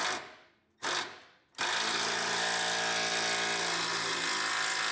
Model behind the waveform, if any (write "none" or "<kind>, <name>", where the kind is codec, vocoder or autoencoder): none